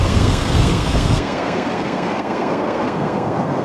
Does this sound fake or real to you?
fake